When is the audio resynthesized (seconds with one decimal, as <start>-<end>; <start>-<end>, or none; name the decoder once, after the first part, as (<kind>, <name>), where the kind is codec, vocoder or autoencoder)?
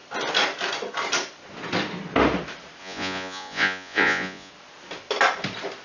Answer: 2.8-4.5 (vocoder, Vocos)